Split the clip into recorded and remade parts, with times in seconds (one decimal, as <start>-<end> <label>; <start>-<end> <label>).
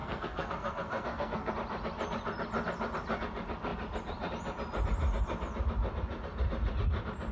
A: 0.0-1.5 remade; 1.5-7.3 recorded